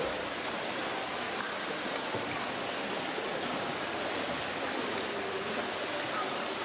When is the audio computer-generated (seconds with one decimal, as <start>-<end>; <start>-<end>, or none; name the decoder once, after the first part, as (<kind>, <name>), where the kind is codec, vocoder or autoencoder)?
3.3-3.8 (codec, DAC)